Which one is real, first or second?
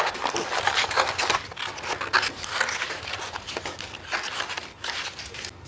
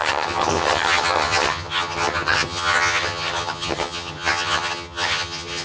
first